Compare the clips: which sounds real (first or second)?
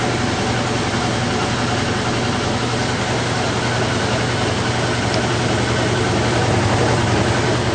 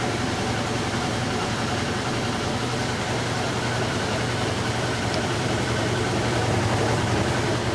first